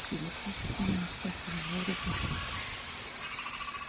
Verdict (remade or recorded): recorded